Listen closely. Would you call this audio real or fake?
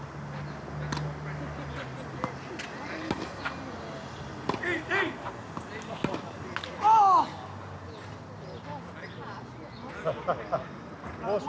real